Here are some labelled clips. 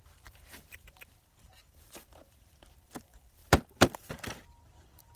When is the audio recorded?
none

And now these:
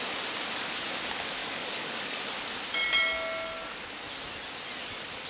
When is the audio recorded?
0.0-1.4; 2.2-5.3

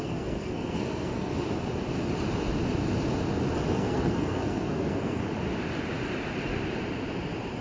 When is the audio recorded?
1.3-3.7; 5.2-7.6

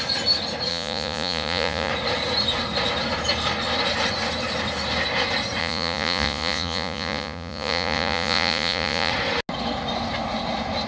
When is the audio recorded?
0.0-0.7; 1.9-5.6; 9.1-10.9

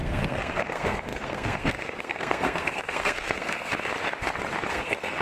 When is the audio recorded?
3.7-4.7

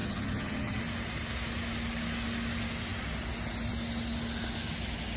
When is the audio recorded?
0.8-5.2